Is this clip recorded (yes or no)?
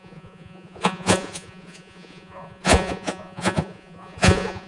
no